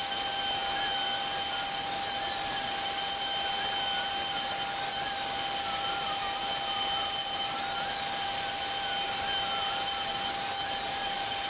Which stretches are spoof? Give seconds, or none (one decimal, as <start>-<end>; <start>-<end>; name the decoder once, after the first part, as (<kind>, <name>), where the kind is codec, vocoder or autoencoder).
none